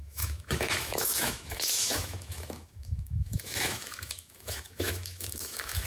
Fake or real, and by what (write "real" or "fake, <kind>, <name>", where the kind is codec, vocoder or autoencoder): fake, autoencoder, DAC-VAE